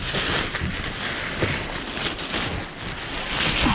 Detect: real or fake real